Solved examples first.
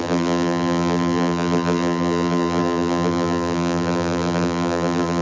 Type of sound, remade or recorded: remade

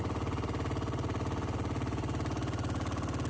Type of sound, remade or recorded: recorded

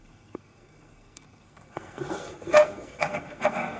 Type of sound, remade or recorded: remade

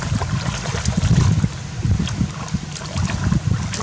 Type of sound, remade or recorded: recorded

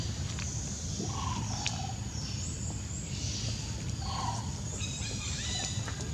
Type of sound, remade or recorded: recorded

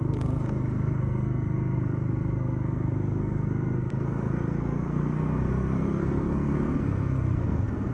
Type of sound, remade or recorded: remade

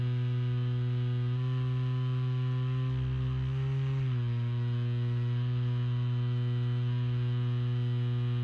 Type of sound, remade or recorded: recorded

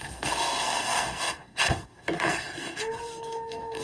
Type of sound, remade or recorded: remade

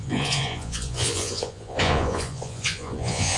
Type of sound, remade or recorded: remade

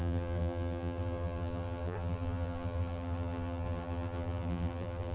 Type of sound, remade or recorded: remade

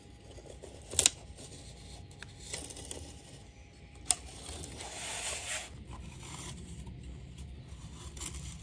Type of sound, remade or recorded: recorded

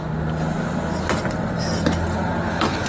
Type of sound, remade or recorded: recorded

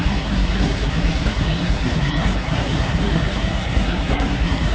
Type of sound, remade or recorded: remade